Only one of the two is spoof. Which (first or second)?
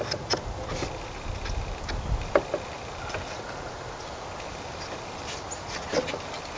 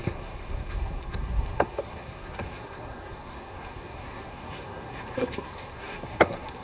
second